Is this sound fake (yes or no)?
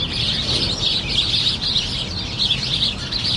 no